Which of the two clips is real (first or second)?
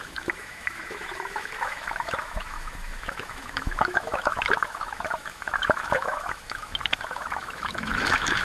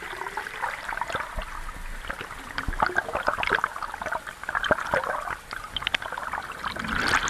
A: second